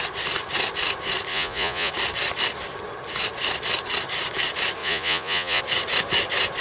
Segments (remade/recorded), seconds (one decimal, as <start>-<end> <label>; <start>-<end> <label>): 0.0-1.3 recorded; 1.3-1.9 remade; 1.9-4.8 recorded; 4.8-5.6 remade; 5.6-6.6 recorded